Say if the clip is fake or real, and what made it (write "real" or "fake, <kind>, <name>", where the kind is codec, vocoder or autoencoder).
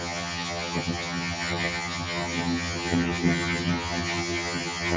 fake, vocoder, HiFi-GAN